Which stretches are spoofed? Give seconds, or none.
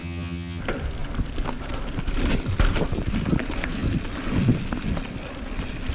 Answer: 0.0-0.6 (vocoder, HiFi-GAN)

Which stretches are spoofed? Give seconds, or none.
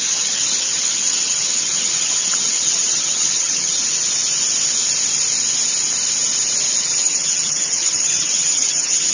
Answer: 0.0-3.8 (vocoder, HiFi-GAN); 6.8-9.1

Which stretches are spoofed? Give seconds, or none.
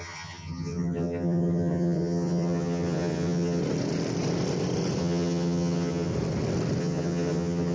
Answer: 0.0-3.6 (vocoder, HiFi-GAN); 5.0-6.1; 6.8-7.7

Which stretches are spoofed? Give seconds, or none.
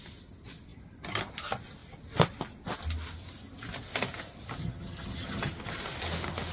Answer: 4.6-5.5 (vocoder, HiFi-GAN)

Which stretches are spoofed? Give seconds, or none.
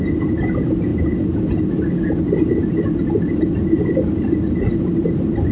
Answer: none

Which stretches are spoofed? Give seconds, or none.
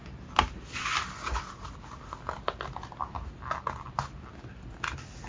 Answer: none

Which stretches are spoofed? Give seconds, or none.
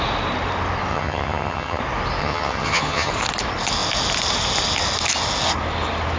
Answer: 0.9-1.8 (vocoder, HiFi-GAN); 2.2-3.1